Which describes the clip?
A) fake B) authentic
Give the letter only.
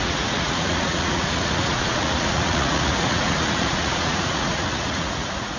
A